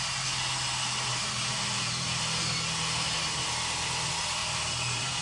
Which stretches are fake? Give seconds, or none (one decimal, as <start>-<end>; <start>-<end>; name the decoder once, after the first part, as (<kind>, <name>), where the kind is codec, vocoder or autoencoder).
1.1-2.4 (vocoder, BigVGAN v2); 4.4-5.2